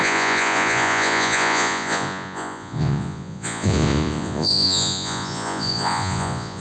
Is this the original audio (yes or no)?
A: no